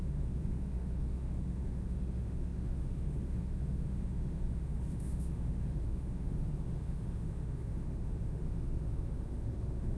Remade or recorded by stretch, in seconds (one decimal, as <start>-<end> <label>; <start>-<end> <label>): 0.0-10.0 remade